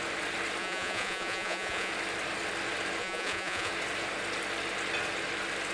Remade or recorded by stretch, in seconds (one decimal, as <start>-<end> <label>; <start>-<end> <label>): 0.0-0.6 recorded; 0.6-1.9 remade; 1.9-3.0 recorded; 3.0-3.7 remade; 3.7-5.7 recorded